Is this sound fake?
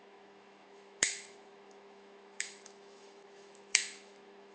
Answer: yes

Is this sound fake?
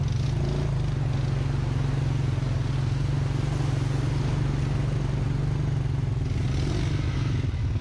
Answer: no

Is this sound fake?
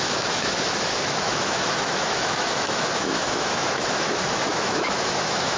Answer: yes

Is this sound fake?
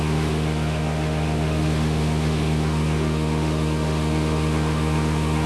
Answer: yes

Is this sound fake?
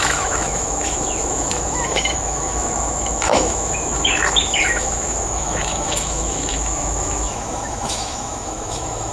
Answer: yes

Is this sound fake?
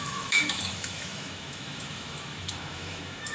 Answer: yes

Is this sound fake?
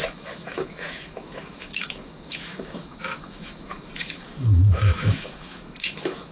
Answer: yes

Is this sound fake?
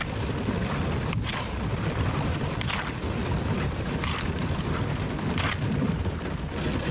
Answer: no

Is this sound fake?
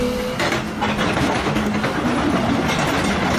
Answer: no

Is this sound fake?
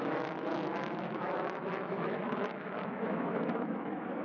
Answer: yes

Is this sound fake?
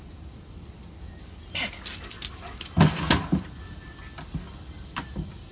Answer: no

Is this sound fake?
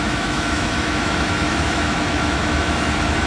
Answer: yes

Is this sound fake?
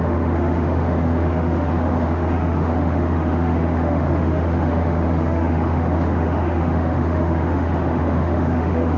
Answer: yes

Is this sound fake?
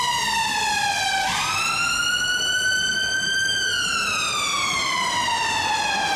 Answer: no